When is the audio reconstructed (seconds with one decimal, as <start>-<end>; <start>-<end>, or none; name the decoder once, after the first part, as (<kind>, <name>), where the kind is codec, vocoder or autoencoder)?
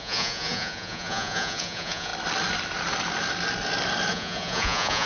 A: 0.0-2.1 (vocoder, Vocos); 4.1-5.1